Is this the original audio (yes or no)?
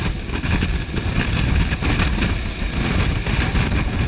yes